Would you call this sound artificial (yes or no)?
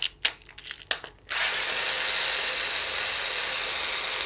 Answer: no